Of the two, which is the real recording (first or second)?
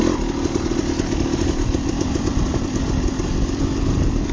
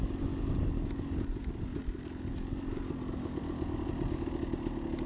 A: second